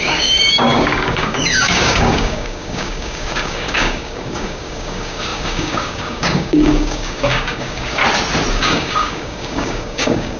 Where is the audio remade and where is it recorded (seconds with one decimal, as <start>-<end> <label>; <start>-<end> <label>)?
0.0-8.0 remade; 8.0-8.5 recorded; 8.5-10.4 remade